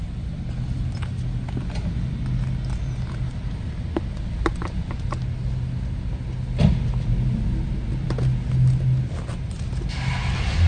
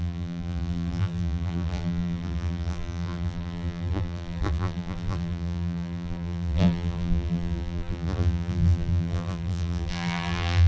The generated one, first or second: second